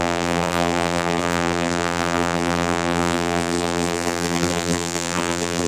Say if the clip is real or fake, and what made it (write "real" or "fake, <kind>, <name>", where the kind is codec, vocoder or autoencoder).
fake, vocoder, BigVGAN v2